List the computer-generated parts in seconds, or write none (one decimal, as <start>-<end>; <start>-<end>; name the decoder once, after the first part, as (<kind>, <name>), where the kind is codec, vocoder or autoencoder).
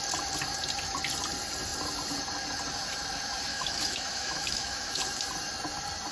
3.5-5.0 (autoencoder, DAC-VAE)